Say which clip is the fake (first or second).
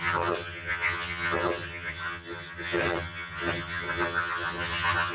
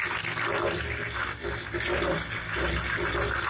first